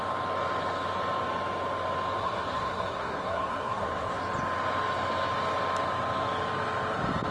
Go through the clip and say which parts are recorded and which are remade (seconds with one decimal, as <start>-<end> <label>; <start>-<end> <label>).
0.0-2.2 recorded; 2.2-4.2 remade; 4.2-7.3 recorded